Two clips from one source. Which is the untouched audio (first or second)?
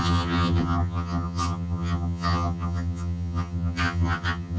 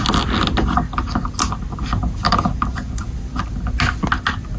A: second